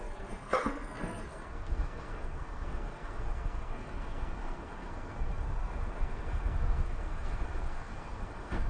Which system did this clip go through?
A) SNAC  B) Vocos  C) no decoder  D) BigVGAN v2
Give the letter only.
A